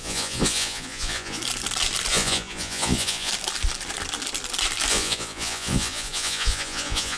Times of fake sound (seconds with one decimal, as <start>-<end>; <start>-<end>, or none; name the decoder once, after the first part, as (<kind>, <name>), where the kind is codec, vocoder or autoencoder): 0.0-1.4 (vocoder, Vocos); 2.1-3.3; 4.9-7.2